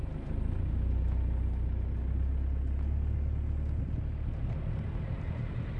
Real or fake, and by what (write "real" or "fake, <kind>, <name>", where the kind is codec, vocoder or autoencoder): real